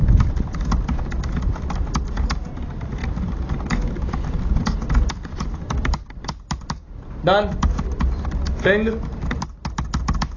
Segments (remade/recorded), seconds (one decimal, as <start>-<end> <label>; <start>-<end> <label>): 0.0-1.6 remade; 1.6-3.0 recorded; 3.0-6.1 remade; 6.1-10.4 recorded